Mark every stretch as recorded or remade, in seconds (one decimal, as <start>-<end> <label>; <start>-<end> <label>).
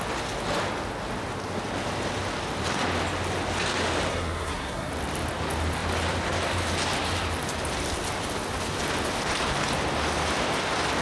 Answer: 0.0-4.1 recorded; 4.1-4.9 remade; 4.9-11.0 recorded